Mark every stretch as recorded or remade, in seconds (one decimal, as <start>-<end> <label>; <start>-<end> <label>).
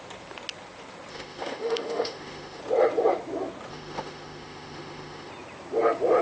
0.0-1.1 recorded; 1.1-2.6 remade; 2.6-3.7 recorded; 3.7-5.3 remade; 5.3-6.2 recorded